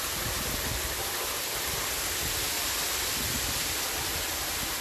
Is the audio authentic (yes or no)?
yes